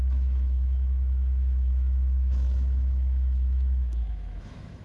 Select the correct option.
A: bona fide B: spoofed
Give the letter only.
B